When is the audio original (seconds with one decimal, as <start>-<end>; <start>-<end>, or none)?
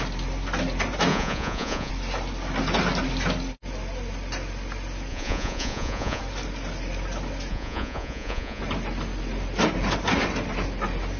0.0-1.1; 1.9-5.1; 6.2-7.5; 8.6-11.2